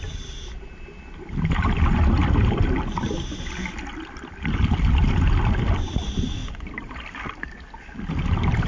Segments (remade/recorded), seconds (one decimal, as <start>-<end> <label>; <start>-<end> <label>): 0.0-8.7 recorded